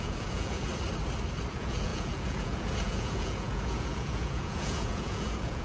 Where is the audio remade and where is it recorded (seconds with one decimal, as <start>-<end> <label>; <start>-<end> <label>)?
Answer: 0.0-0.7 remade; 0.7-1.5 recorded; 1.5-5.6 remade